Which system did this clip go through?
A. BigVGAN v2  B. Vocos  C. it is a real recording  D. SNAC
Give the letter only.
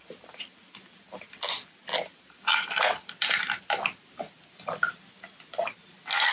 C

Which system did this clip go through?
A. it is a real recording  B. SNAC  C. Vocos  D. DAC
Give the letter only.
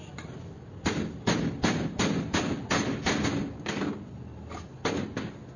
A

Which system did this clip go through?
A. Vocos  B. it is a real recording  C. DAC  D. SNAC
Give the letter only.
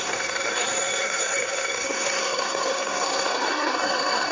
D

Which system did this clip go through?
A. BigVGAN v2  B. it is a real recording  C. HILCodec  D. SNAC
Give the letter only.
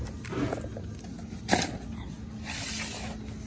B